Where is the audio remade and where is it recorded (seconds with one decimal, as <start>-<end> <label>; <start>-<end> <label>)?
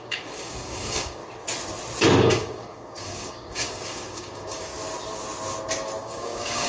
0.0-1.2 remade; 1.2-2.2 recorded; 2.2-4.7 remade; 4.7-6.0 recorded; 6.0-6.7 remade